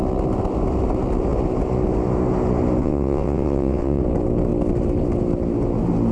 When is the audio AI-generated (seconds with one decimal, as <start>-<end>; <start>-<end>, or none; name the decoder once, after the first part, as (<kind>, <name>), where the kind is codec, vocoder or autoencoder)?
2.8-4.0 (vocoder, WaveNeXt)